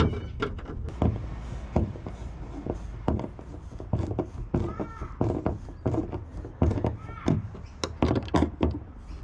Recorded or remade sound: recorded